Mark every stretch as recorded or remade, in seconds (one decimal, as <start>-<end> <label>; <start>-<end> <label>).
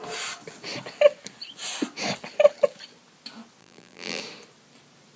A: 0.0-3.6 recorded; 3.6-4.2 remade; 4.2-5.2 recorded